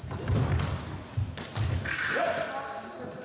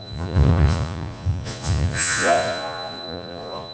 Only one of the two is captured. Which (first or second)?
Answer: first